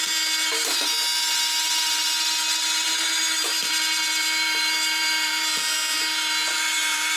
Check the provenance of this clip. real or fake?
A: fake